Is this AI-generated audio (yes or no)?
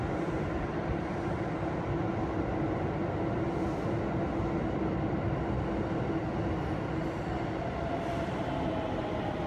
no